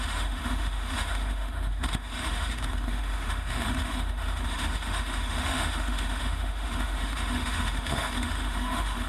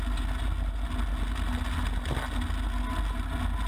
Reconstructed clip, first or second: first